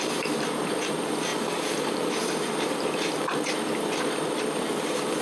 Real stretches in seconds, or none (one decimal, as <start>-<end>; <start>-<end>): none